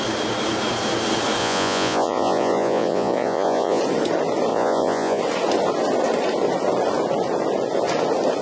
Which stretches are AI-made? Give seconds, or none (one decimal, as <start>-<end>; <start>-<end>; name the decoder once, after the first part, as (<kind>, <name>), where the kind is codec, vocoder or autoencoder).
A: 1.4-3.8 (vocoder, Vocos); 4.5-5.2